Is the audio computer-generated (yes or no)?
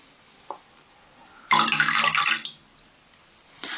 no